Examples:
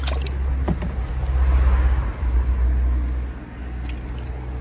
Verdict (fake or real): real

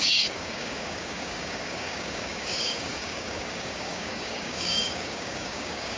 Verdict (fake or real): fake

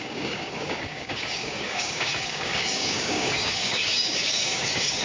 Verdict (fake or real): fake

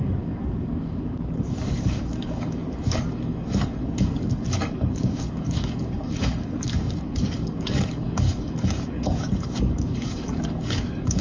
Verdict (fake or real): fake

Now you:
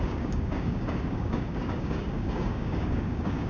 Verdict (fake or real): fake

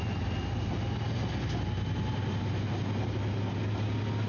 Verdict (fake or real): real